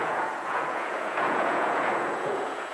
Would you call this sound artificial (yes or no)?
yes